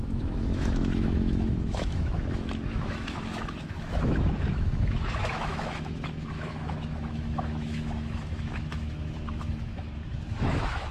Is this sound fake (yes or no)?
yes